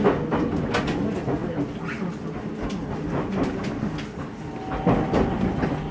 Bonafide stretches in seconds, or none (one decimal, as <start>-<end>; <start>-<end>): 0.0-5.9